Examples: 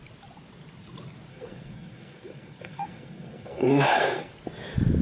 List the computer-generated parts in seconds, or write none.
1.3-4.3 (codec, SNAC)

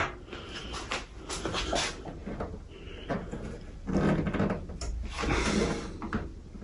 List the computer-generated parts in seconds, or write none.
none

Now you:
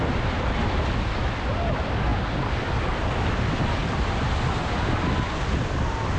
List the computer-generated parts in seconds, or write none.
3.8-4.3 (vocoder, BigVGAN v2)